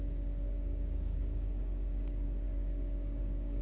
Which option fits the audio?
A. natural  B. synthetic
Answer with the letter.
B